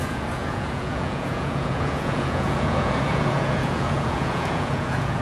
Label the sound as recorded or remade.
remade